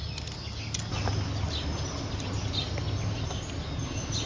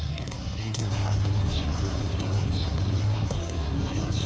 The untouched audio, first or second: first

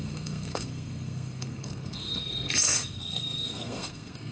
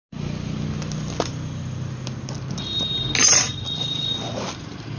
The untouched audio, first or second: second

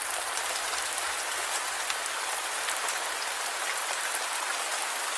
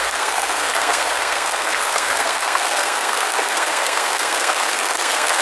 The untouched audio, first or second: first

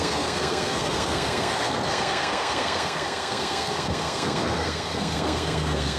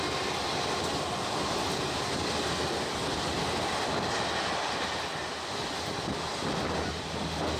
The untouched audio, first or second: second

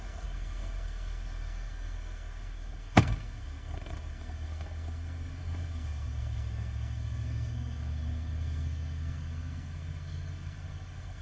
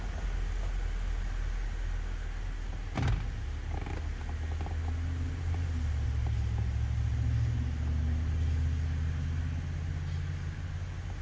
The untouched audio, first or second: second